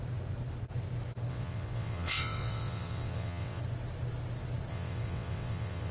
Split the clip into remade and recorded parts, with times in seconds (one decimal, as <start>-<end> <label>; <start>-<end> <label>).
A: 0.0-1.3 recorded; 1.3-3.6 remade; 3.6-4.7 recorded; 4.7-5.9 remade